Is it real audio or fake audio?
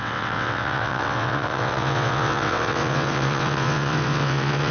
fake